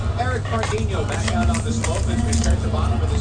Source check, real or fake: real